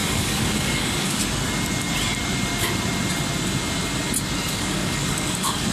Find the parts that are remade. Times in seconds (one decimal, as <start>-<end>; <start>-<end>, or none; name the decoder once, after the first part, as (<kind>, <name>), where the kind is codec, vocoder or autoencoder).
0.0-1.2 (codec, DAC); 4.5-5.7